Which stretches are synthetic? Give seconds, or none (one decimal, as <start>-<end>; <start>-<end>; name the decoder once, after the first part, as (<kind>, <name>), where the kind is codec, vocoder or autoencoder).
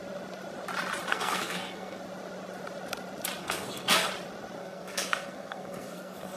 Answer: 1.1-2.0 (codec, SNAC); 3.4-4.1; 4.6-6.4